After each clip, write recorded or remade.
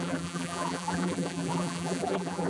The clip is remade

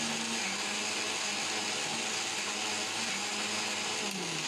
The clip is recorded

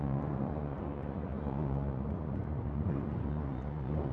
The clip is remade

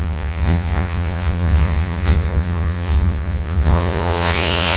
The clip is remade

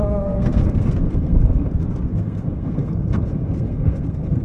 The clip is remade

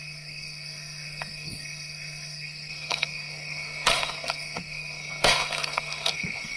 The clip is remade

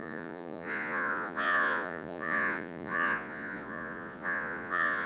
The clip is remade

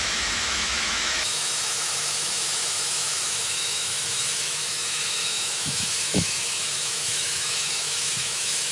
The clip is remade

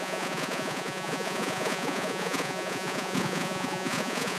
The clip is remade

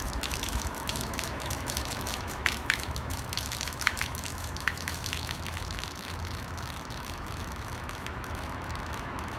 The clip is remade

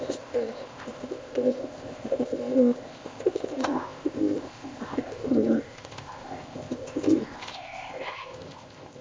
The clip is remade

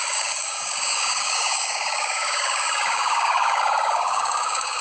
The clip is remade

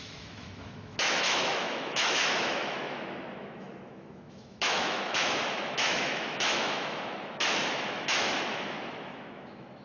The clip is remade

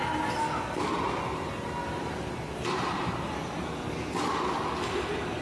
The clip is recorded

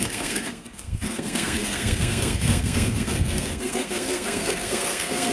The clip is remade